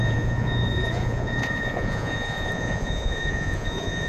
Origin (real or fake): fake